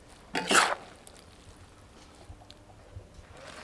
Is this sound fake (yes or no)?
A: no